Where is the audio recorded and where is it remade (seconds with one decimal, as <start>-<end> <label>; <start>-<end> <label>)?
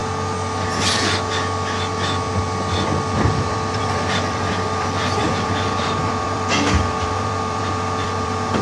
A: 0.0-3.3 recorded; 3.3-8.6 remade